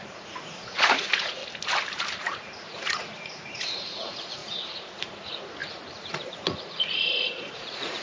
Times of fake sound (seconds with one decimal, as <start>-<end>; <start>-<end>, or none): 0.0-1.4; 2.2-8.0